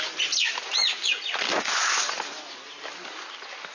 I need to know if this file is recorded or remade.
recorded